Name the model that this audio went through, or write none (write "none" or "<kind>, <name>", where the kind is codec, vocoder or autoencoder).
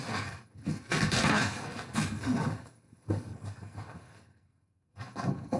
codec, SNAC